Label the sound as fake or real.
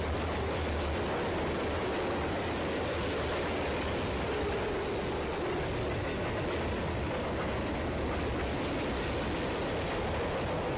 real